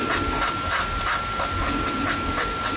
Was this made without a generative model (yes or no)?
yes